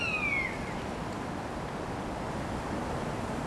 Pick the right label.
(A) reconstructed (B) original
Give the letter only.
B